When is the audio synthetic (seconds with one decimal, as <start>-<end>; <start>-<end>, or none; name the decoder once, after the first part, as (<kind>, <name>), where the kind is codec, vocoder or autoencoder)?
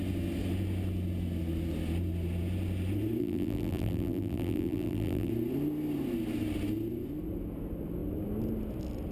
3.2-5.3 (vocoder, BigVGAN v2)